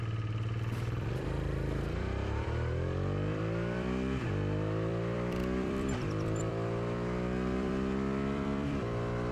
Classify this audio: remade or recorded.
remade